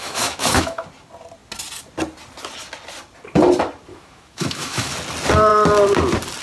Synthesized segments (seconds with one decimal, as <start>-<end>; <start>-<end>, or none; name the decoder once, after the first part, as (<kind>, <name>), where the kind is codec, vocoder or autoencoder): 0.0-0.8 (autoencoder, DAC-VAE); 3.9-4.9